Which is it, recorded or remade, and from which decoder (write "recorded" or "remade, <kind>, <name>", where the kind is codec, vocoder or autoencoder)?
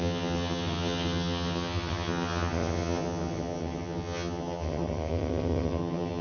remade, vocoder, HiFi-GAN